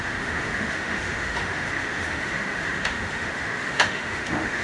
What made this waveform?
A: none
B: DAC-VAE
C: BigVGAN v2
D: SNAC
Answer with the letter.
B